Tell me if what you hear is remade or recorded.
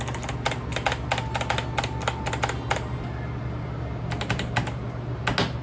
recorded